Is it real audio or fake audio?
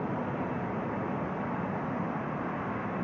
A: real